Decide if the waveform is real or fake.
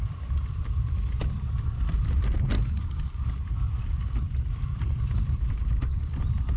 fake